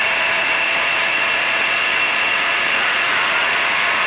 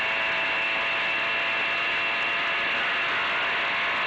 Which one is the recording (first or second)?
second